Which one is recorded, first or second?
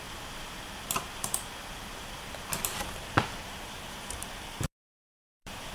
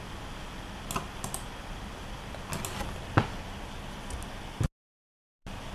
second